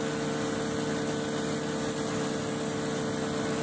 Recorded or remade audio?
recorded